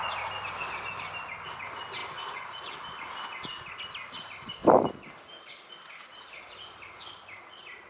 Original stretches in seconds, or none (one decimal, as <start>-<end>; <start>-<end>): 0.0-7.9